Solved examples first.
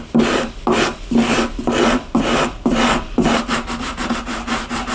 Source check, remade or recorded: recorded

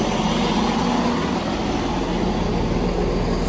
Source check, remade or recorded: recorded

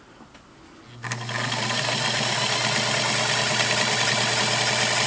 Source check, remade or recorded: recorded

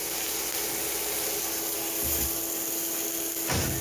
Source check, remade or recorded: recorded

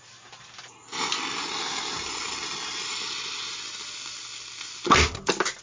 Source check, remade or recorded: recorded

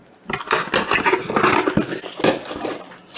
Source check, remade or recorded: recorded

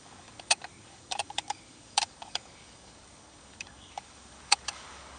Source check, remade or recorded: remade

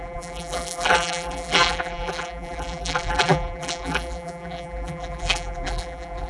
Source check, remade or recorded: remade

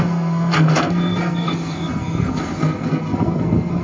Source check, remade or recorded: remade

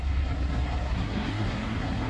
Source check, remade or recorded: remade